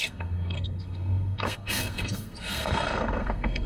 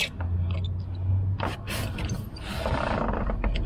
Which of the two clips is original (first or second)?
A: second